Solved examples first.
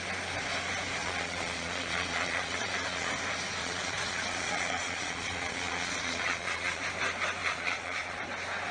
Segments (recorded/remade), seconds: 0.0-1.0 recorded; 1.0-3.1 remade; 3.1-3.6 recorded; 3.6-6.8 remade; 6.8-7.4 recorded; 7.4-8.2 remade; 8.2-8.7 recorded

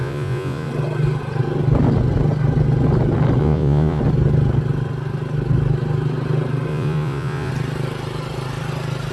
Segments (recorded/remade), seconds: 0.0-0.7 remade; 0.7-3.4 recorded; 3.4-4.0 remade; 4.0-6.7 recorded; 6.7-7.5 remade; 7.5-9.1 recorded